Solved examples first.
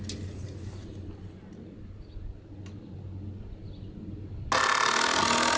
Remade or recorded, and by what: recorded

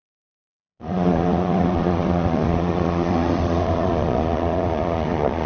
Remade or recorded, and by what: remade, vocoder, Vocos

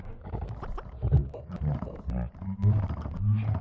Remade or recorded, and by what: remade, vocoder, BigVGAN v2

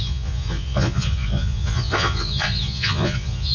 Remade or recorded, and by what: remade, vocoder, Vocos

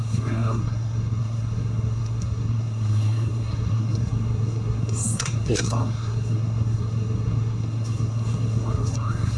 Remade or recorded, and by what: remade, codec, SNAC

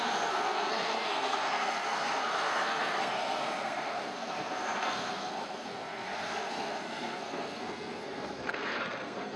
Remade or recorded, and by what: remade, codec, SNAC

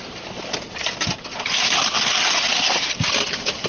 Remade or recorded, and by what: recorded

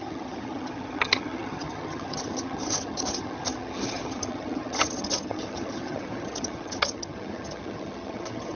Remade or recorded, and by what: remade, vocoder, HiFi-GAN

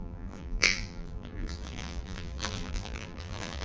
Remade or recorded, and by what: remade, vocoder, BigVGAN v2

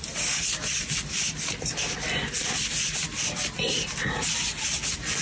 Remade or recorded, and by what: recorded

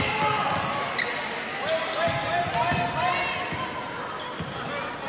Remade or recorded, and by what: recorded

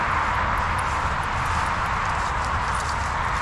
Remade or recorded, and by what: recorded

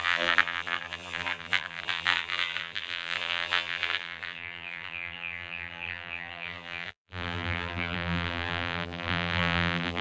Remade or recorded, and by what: remade, vocoder, BigVGAN v2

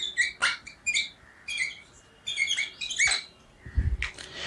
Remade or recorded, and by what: recorded